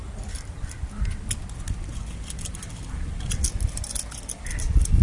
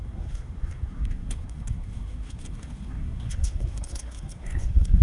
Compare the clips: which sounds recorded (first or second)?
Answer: first